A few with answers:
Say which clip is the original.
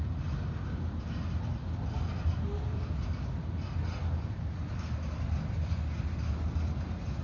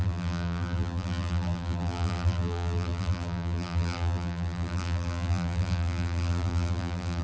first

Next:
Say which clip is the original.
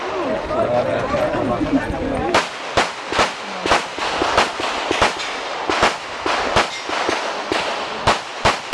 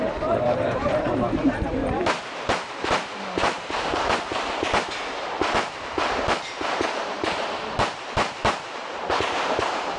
first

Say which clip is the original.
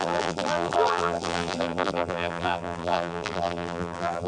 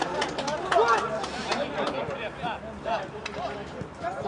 second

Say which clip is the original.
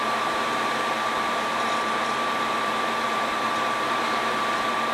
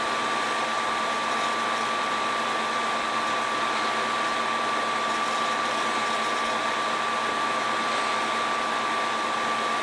second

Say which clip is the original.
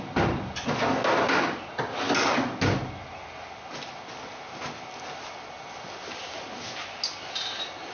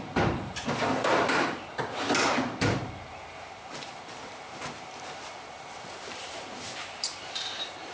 first